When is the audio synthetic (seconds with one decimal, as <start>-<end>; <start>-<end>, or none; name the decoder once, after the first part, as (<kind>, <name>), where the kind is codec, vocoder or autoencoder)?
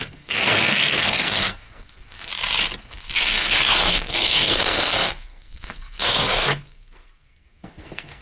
0.0-2.3 (codec, SNAC); 2.8-8.2